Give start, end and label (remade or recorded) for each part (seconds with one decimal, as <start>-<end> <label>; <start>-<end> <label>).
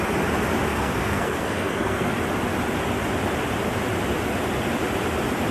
0.0-0.7 recorded; 0.7-2.1 remade; 2.1-5.5 recorded